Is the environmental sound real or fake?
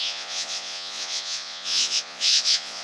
fake